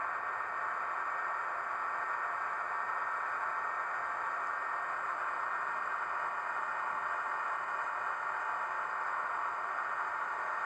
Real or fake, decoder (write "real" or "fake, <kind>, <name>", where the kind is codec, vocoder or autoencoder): real